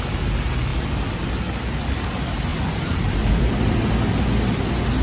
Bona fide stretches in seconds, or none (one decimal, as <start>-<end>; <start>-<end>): 0.0-2.5; 3.4-5.0